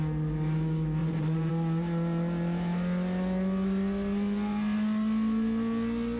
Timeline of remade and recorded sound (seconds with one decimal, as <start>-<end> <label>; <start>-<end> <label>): 0.0-1.0 recorded; 1.0-1.5 remade; 1.5-6.2 recorded